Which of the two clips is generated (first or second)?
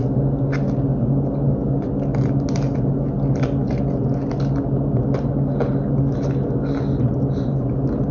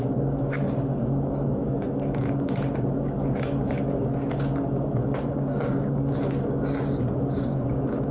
second